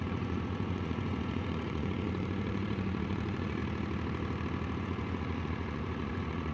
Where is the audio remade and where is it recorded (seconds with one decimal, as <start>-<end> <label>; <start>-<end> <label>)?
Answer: 0.0-3.6 remade; 3.6-4.8 recorded; 4.8-6.5 remade